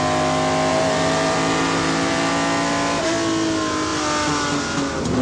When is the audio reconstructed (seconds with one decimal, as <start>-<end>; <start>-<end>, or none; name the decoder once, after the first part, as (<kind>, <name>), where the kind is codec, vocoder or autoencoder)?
0.7-2.3 (vocoder, BigVGAN v2)